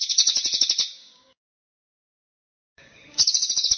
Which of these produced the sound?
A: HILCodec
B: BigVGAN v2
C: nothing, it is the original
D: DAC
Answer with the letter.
D